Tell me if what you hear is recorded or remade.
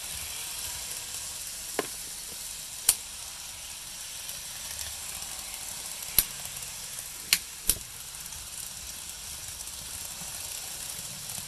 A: recorded